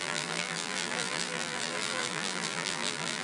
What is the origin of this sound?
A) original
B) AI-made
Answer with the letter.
B